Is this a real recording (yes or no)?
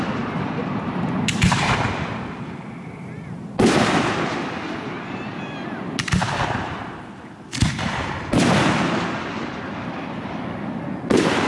yes